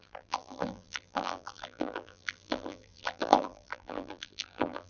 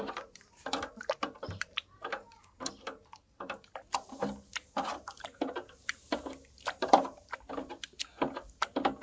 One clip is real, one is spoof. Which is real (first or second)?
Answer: second